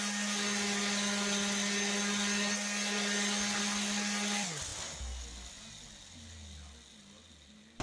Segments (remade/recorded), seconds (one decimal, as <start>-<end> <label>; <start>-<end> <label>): 0.0-7.8 recorded